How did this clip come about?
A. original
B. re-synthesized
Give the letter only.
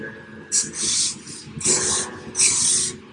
A